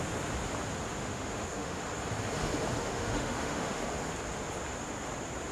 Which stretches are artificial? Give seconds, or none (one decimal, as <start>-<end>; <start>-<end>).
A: 1.0-1.8; 2.8-3.9